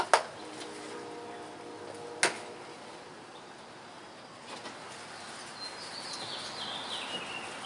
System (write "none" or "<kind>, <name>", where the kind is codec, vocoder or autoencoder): none